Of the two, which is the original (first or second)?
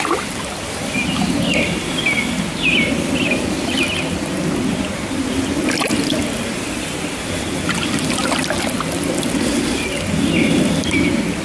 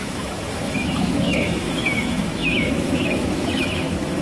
first